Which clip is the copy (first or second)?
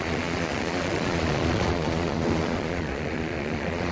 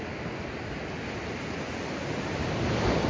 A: first